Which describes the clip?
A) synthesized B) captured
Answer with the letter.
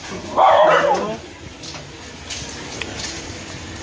B